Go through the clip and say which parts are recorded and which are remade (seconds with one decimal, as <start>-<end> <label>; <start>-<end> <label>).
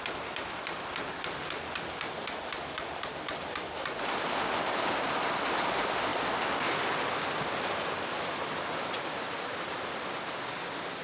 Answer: 0.0-11.0 recorded